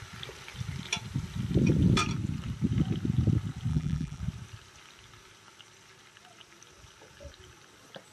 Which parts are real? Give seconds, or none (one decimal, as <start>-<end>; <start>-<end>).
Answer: 0.0-3.7; 4.2-8.1